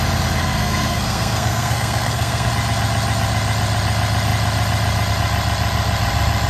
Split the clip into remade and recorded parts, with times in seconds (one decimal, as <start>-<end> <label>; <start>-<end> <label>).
0.0-0.4 recorded; 0.4-2.5 remade; 2.5-6.5 recorded